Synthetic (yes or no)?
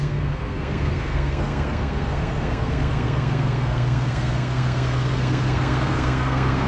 yes